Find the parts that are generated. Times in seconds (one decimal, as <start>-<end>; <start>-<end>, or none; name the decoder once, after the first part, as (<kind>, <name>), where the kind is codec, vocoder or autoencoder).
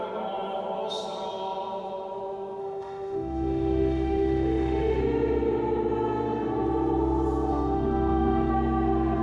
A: 2.6-5.0 (autoencoder, DAC-VAE); 7.5-8.5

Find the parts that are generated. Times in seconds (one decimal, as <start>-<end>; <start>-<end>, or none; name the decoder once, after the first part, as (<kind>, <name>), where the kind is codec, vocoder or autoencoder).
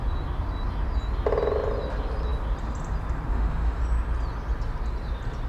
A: 3.3-3.8 (autoencoder, DAC-VAE)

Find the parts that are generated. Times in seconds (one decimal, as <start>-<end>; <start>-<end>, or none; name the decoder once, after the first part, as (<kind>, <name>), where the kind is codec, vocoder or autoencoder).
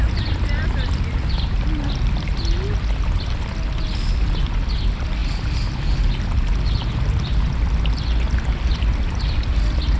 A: none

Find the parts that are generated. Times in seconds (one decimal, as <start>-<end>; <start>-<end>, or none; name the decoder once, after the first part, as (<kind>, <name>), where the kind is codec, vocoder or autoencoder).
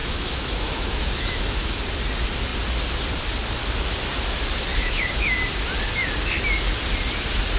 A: 0.0-1.8 (autoencoder, DAC-VAE); 4.7-5.4